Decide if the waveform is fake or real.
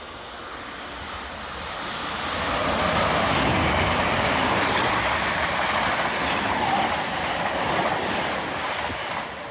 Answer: real